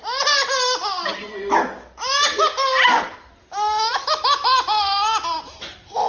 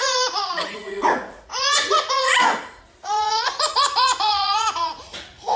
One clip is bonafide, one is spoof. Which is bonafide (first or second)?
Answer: first